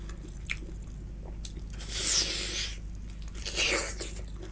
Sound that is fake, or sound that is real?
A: real